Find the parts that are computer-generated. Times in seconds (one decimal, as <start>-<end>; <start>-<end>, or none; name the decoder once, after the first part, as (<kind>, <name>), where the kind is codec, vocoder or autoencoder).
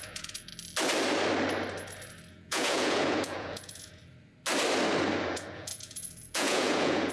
0.0-0.5 (vocoder, Vocos); 2.3-4.0; 5.2-7.1